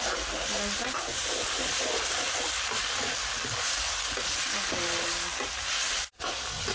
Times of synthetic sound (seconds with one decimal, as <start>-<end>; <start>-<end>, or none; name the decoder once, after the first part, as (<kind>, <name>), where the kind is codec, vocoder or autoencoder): none